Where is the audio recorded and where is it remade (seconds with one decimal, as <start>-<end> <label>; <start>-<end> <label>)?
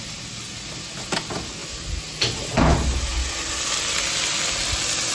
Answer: 0.0-5.1 recorded